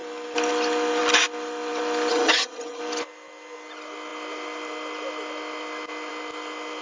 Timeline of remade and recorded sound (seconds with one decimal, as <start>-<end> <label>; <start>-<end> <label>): 0.0-2.1 recorded; 2.1-2.8 remade; 2.8-6.8 recorded